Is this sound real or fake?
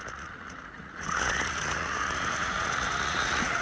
fake